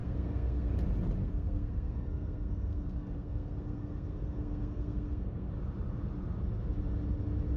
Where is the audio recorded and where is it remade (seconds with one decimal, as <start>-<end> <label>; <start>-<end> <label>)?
0.0-0.7 remade; 0.7-1.2 recorded; 1.2-5.5 remade; 5.5-7.6 recorded